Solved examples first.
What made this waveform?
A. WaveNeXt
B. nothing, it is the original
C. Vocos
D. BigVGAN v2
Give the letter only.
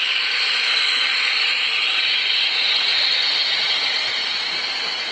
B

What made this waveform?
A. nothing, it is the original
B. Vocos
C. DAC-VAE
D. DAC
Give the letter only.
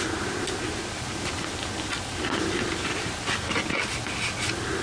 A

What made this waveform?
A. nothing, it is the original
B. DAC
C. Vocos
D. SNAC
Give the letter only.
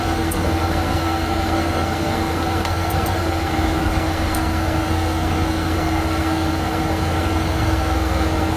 D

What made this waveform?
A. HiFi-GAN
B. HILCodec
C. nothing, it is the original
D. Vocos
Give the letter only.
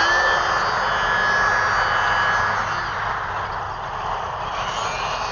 C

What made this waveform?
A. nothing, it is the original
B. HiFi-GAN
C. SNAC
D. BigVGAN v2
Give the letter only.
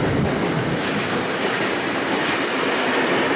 A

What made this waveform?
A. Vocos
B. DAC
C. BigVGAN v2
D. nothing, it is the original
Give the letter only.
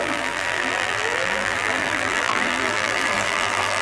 C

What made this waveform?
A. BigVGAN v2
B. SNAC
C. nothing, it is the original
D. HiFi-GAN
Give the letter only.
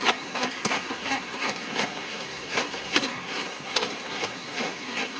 B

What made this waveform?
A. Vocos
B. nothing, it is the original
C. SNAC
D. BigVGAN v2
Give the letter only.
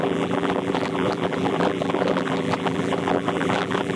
D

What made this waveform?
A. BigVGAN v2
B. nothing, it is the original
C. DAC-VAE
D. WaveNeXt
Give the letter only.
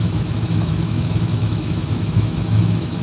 C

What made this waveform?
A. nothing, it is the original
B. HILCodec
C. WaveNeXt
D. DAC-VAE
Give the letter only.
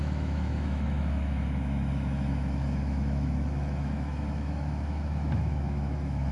D